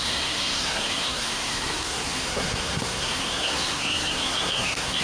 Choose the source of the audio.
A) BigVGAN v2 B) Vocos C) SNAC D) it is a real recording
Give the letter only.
C